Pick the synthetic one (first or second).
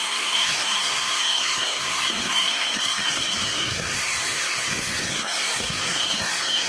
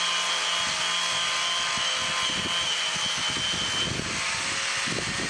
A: first